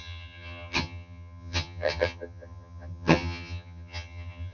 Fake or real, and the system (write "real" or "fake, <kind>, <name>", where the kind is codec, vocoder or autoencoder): fake, vocoder, HiFi-GAN